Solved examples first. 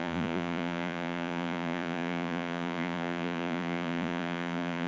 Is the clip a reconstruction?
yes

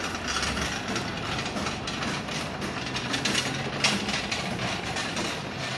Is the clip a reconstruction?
no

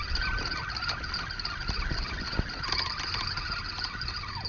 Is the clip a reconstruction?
no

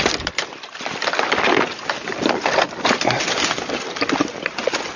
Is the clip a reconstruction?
no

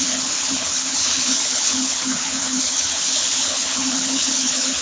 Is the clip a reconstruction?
yes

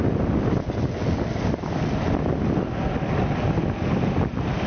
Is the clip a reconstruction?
no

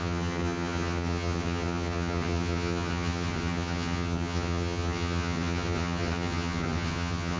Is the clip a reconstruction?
yes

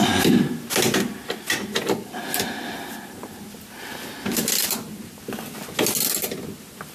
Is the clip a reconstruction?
no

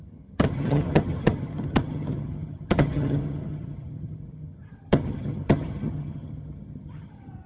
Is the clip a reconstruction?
yes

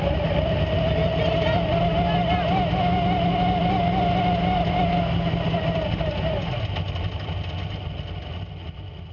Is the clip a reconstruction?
no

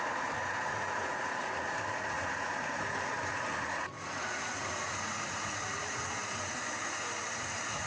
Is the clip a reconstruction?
yes